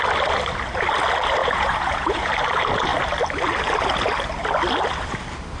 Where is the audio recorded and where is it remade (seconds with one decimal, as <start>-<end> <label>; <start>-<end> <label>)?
0.0-1.4 recorded; 1.4-2.3 remade; 2.3-5.6 recorded